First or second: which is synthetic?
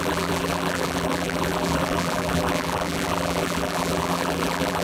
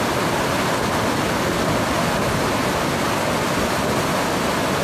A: first